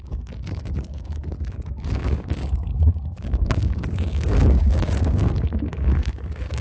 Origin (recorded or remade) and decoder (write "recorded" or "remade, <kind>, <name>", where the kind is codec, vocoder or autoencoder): remade, codec, DAC